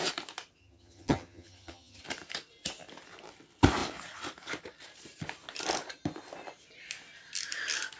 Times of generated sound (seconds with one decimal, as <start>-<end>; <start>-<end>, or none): 0.6-2.0